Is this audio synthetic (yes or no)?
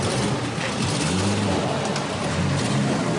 no